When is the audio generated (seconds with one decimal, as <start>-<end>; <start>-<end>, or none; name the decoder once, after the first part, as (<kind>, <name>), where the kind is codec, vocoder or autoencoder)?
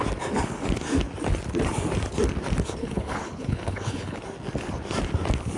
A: 2.8-4.2 (codec, HILCodec)